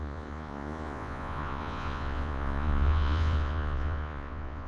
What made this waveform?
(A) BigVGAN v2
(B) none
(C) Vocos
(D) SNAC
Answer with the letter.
C